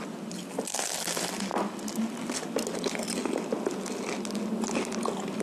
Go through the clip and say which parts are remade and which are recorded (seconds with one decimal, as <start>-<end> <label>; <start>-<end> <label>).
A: 0.0-5.4 recorded

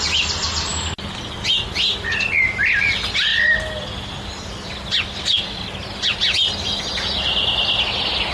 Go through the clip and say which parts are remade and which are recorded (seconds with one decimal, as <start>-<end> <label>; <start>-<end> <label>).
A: 0.0-8.3 recorded

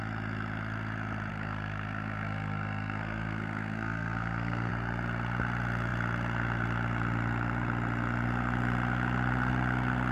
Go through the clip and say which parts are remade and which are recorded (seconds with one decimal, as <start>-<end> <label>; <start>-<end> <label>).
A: 0.0-1.3 recorded; 1.3-4.7 remade; 4.7-10.1 recorded

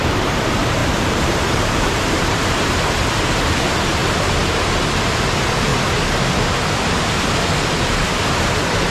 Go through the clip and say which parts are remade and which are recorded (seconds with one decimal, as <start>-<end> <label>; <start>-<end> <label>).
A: 0.0-4.0 remade; 4.0-5.0 recorded; 5.0-5.7 remade; 5.7-8.4 recorded; 8.4-8.9 remade